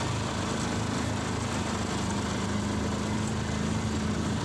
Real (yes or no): yes